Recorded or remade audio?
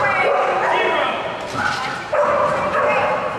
remade